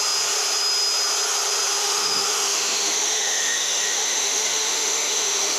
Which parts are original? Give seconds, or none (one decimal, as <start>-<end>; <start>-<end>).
0.0-1.8